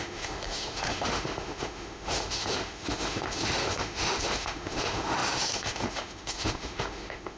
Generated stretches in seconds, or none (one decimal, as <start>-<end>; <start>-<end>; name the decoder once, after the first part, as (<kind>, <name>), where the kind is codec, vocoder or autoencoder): 0.0-7.4 (autoencoder, DAC-VAE)